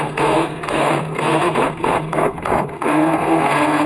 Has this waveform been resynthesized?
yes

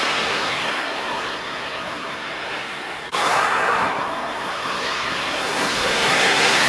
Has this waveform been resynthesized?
yes